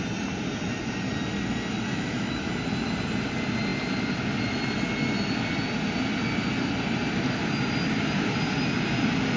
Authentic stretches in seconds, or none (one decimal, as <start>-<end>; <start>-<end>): 0.0-1.9; 2.5-9.4